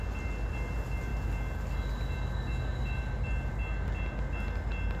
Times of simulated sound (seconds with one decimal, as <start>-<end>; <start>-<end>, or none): none